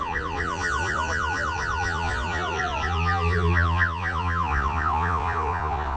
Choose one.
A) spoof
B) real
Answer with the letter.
A